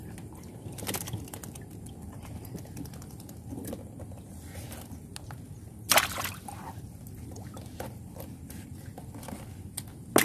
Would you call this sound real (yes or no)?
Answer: yes